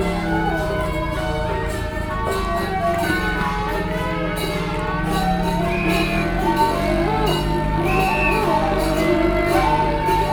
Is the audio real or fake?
real